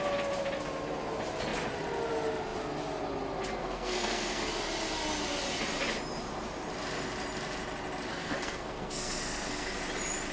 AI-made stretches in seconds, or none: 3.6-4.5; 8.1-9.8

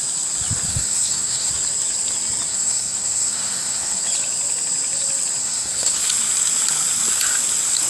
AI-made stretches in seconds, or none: 0.7-1.5; 2.5-4.0; 5.4-6.0

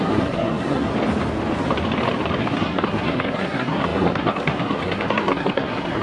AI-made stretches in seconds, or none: 0.0-0.9; 2.4-6.0

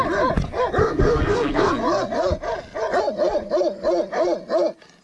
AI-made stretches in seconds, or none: 0.8-1.7

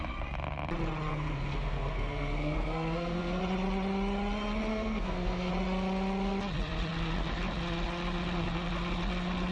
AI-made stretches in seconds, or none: 1.1-3.4; 4.7-5.5

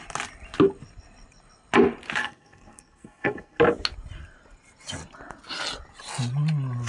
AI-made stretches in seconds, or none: 2.2-3.6

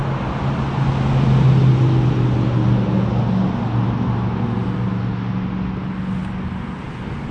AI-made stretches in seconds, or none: none